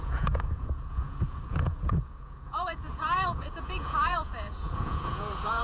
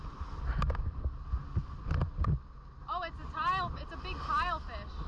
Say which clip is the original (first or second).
second